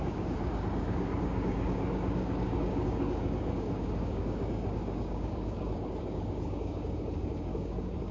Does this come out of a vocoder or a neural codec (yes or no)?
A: yes